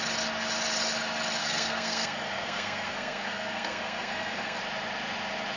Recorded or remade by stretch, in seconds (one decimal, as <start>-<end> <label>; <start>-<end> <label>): 0.0-1.4 recorded; 1.4-4.6 remade; 4.6-5.6 recorded